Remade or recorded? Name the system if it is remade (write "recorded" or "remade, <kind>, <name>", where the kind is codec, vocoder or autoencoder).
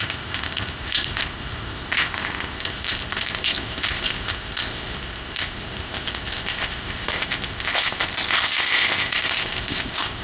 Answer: remade, codec, ZipCodec